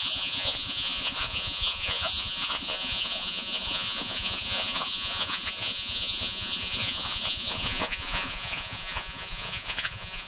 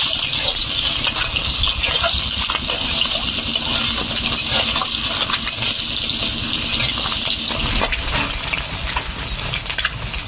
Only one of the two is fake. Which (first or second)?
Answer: first